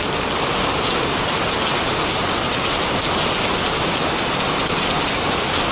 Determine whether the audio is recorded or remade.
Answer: recorded